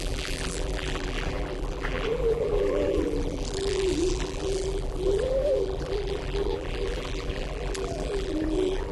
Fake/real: fake